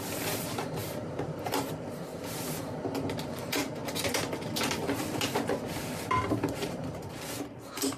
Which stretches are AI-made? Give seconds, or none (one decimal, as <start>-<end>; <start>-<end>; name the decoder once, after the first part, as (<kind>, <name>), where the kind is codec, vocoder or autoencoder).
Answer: 0.0-2.1 (vocoder, BigVGAN v2); 3.3-3.8; 6.7-8.0